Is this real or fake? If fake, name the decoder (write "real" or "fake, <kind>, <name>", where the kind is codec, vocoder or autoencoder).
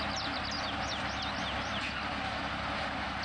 real